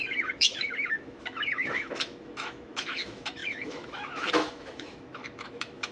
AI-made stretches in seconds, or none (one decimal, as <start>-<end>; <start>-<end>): 0.0-5.9